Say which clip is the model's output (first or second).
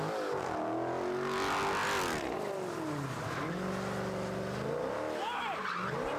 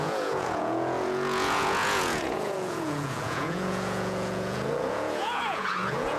second